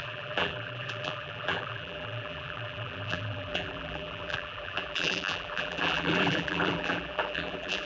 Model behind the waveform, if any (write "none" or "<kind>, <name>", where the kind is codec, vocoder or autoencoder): vocoder, BigVGAN v2